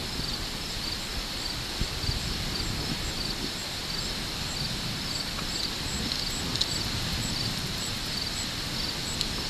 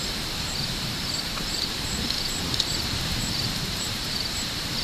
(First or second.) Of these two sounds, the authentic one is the first